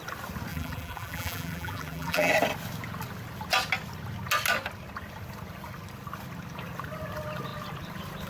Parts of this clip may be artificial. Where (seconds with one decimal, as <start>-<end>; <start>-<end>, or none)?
0.5-2.3